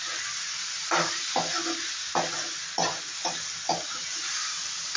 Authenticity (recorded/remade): recorded